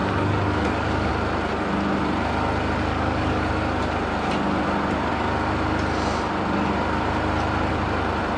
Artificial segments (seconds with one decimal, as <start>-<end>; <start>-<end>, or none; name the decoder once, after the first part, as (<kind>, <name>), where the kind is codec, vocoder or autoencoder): 0.0-1.1 (codec, DAC); 2.9-3.5

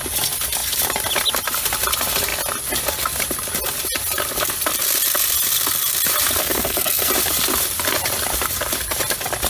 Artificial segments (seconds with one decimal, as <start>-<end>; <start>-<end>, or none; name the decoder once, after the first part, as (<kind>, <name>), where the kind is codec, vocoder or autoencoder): 6.4-7.1 (codec, SNAC)

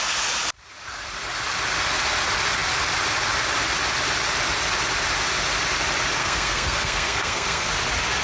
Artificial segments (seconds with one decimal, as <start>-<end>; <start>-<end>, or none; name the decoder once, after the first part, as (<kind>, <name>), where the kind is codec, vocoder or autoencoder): 6.2-7.7 (codec, SNAC)

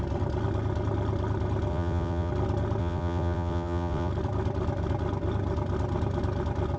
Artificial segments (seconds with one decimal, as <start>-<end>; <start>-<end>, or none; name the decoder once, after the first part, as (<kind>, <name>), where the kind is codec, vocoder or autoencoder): 1.7-2.3 (vocoder, WaveNeXt); 2.8-4.1

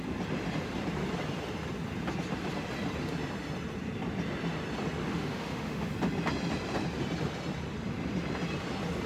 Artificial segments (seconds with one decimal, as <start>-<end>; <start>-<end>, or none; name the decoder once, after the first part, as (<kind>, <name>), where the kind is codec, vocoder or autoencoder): 5.1-5.9 (autoencoder, DAC-VAE)

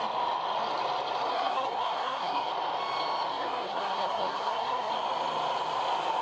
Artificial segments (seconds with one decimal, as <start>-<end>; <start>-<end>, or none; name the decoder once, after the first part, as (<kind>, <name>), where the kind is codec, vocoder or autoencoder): 1.3-2.5 (codec, SNAC); 3.3-4.9

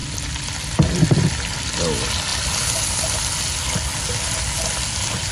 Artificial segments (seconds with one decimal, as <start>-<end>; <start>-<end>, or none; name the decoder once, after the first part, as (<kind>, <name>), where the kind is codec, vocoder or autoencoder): none